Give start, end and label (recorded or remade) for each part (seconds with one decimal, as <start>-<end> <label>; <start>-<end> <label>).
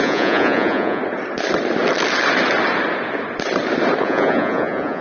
0.0-1.0 remade; 1.0-4.0 recorded; 4.0-5.0 remade